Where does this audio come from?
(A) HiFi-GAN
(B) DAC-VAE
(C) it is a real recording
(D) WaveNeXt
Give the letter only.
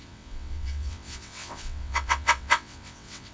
D